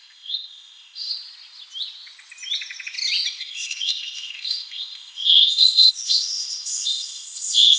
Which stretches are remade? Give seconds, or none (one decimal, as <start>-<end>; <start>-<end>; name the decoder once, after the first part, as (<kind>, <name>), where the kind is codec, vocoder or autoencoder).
0.0-1.1 (codec, ZipCodec); 3.4-7.8

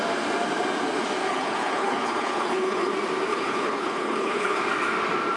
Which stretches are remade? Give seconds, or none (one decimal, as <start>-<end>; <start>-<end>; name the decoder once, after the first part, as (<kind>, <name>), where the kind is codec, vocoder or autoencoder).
1.3-2.9 (codec, HILCodec); 3.3-4.6

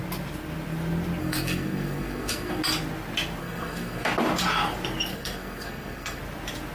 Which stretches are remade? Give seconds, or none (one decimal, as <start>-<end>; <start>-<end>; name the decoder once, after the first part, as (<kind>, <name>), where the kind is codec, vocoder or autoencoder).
1.2-2.6 (codec, SNAC); 3.4-4.1; 5.1-6.2

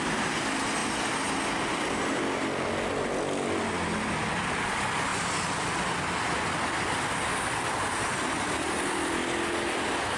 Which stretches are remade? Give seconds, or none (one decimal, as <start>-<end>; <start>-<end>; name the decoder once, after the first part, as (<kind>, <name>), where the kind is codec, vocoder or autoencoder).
none

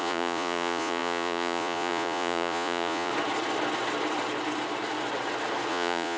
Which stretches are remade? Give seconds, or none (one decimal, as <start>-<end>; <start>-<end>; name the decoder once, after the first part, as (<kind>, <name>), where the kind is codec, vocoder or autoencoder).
0.0-3.1 (vocoder, Vocos); 5.7-6.2